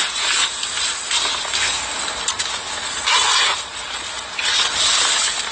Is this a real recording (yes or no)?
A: yes